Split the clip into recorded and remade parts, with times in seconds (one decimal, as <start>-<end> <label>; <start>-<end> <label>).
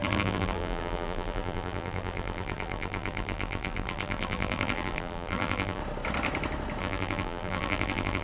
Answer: 0.0-5.8 remade; 5.8-6.8 recorded; 6.8-8.2 remade